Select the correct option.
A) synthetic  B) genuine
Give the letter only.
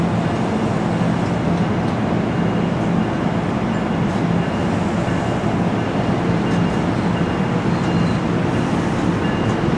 B